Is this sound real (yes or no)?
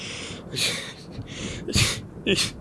yes